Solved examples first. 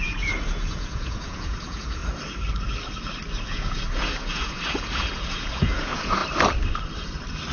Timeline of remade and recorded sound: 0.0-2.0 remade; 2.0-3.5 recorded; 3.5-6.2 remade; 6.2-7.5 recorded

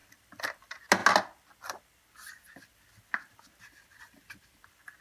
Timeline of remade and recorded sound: 0.0-0.6 remade; 0.6-5.0 recorded

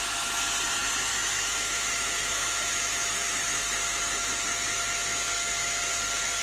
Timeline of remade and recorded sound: 0.0-1.1 recorded; 1.1-4.4 remade; 4.4-5.1 recorded; 5.1-5.8 remade; 5.8-6.4 recorded

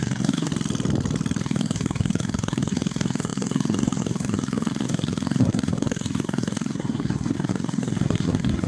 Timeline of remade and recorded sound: 0.0-0.5 remade; 0.5-1.4 recorded; 1.4-8.7 remade

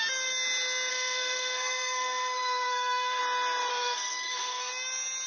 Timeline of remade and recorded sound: 0.0-0.9 recorded; 0.9-3.2 remade; 3.2-3.7 recorded; 3.7-4.7 remade; 4.7-5.3 recorded

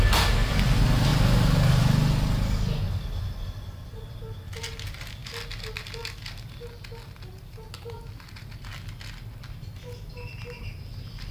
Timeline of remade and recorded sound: 0.0-11.3 recorded

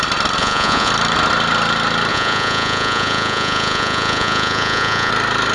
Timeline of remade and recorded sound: 0.0-0.4 recorded; 0.4-0.9 remade; 0.9-2.1 recorded; 2.1-5.1 remade; 5.1-5.5 recorded

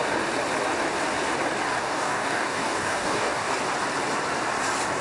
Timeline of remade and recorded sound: 0.0-1.8 recorded; 1.8-3.5 remade; 3.5-5.0 recorded